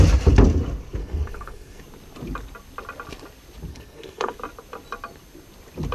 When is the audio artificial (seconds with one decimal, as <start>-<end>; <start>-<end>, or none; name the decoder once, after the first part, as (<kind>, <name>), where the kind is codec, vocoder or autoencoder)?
1.0-1.8 (codec, SNAC); 3.7-4.3